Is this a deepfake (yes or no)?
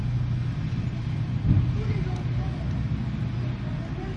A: no